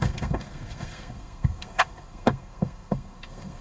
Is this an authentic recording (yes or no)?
no